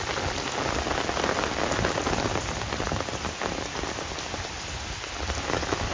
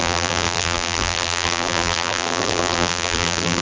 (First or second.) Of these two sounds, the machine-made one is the second